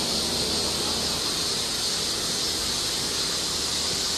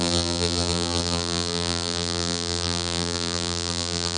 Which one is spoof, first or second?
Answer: second